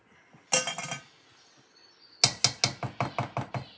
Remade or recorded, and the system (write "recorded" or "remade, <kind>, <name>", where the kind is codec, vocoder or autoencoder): recorded